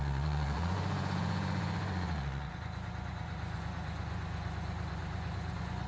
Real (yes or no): no